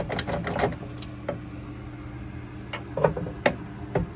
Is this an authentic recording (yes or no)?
yes